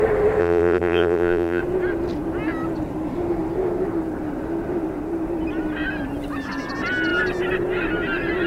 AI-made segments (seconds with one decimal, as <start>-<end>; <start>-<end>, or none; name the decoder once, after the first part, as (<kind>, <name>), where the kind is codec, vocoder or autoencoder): 0.4-1.6 (vocoder, BigVGAN v2)